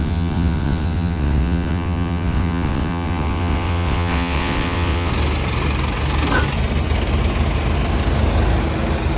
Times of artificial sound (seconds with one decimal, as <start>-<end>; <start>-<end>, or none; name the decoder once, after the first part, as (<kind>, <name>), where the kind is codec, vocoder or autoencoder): 0.0-5.1 (vocoder, WaveNeXt)